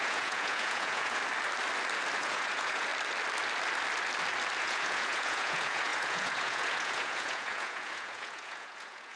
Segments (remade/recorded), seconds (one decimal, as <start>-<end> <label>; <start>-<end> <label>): 0.0-1.2 remade; 1.2-2.2 recorded; 2.2-2.9 remade; 2.9-4.6 recorded; 4.6-9.2 remade